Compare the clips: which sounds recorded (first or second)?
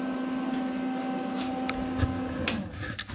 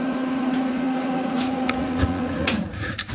first